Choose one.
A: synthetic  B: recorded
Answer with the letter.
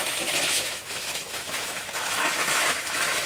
A